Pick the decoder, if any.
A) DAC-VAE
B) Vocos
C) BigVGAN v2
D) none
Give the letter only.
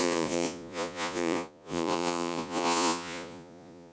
B